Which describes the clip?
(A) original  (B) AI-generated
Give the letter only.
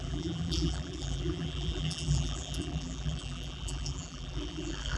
B